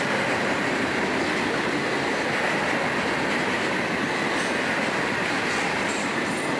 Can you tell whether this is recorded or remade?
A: recorded